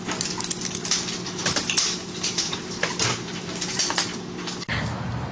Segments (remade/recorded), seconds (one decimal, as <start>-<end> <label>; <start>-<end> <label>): 0.0-1.4 recorded; 1.4-3.9 remade; 3.9-5.3 recorded